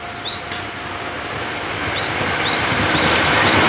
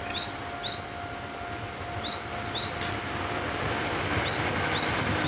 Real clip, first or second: second